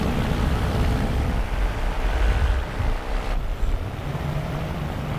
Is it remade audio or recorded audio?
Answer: remade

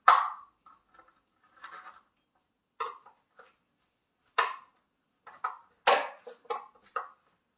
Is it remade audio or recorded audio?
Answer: recorded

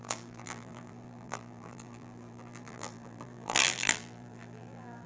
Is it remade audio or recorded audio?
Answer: remade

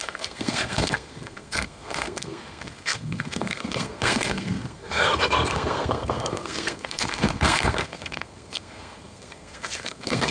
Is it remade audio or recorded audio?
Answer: remade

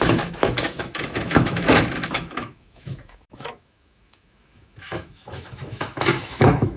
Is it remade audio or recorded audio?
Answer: remade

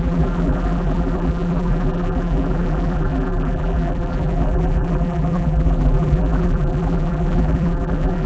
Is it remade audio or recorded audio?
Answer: remade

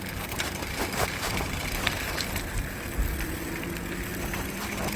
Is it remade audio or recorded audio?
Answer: remade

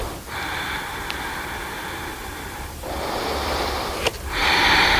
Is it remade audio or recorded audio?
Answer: recorded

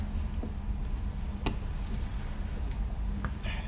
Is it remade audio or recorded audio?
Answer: recorded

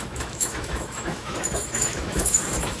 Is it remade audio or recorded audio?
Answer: remade